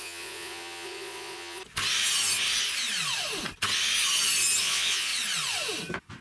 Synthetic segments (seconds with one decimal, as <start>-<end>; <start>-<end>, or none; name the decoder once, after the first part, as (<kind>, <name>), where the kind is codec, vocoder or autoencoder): 0.0-1.6 (vocoder, Vocos); 4.6-5.1